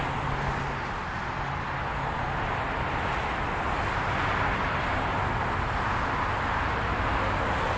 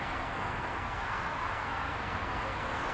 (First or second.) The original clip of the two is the first